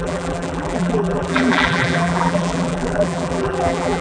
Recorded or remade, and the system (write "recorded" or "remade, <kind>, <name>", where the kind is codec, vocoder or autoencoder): remade, vocoder, BigVGAN v2